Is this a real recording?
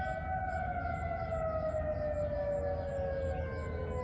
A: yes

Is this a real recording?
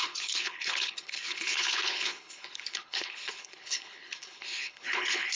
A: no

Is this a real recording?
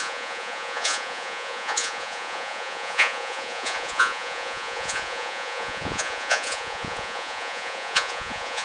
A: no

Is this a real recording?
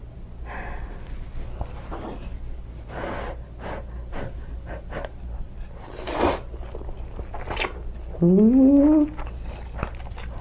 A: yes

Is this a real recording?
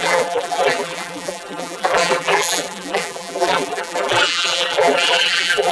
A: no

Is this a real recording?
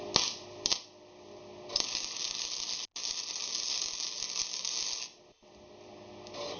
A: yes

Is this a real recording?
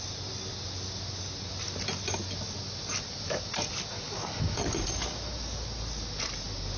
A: yes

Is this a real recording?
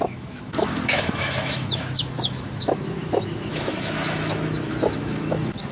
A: no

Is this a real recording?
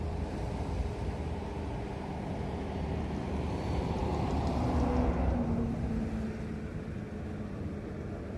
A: yes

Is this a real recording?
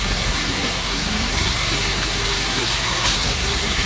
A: no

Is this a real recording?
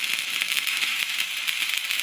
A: no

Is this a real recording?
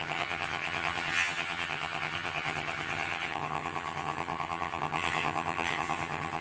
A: no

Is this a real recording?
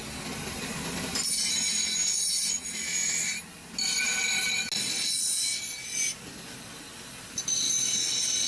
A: yes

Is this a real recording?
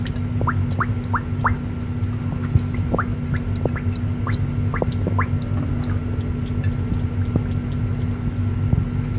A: yes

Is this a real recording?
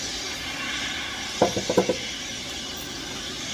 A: yes